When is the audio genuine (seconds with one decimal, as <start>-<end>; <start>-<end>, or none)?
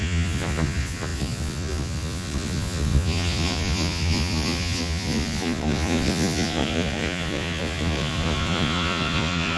none